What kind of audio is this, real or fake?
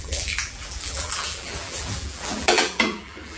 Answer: fake